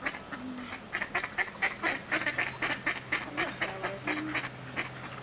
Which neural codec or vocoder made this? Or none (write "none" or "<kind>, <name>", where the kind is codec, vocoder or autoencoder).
none